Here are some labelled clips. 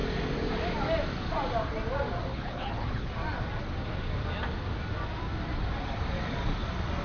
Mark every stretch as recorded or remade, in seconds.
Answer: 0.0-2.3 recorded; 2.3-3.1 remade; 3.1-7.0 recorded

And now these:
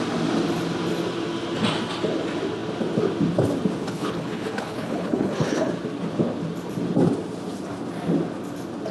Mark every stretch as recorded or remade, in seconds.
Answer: 0.0-3.8 recorded; 3.8-5.7 remade; 5.7-8.9 recorded

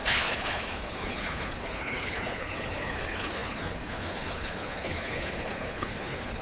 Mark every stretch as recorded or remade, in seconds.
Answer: 0.0-6.4 remade

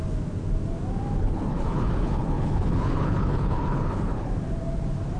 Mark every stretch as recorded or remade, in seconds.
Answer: 0.0-1.2 recorded; 1.2-4.3 remade; 4.3-5.2 recorded

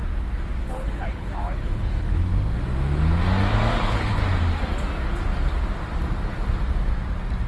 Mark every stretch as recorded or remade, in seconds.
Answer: 0.0-0.6 recorded; 0.6-2.3 remade; 2.3-3.8 recorded; 3.8-4.2 remade; 4.2-7.5 recorded

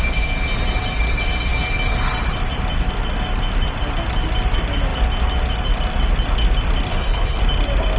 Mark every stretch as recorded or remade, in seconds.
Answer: 0.0-6.9 recorded; 6.9-7.4 remade; 7.4-8.0 recorded

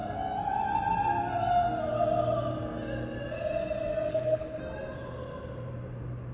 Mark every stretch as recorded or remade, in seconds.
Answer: 0.0-4.1 recorded; 4.1-4.6 remade; 4.6-6.3 recorded

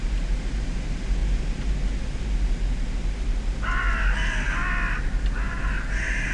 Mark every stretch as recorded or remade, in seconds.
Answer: 0.0-6.3 recorded